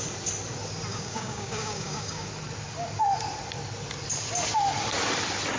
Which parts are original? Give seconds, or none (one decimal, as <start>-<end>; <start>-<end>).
0.0-0.9; 2.3-5.6